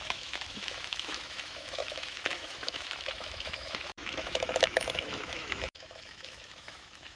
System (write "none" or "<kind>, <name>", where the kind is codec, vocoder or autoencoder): autoencoder, DAC-VAE